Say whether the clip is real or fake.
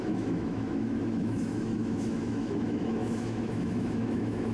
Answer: fake